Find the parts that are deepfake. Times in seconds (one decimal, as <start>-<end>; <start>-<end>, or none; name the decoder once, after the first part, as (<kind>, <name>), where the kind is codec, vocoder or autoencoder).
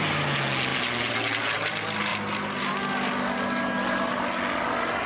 0.7-1.4 (vocoder, BigVGAN v2); 2.1-2.7